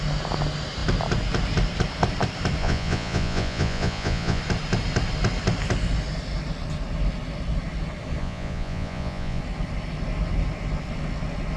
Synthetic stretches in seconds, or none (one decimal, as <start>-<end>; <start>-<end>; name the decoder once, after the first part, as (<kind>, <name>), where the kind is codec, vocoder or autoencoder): 2.6-4.4 (vocoder, Vocos); 8.2-9.4